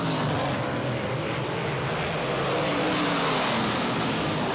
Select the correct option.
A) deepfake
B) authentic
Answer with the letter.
B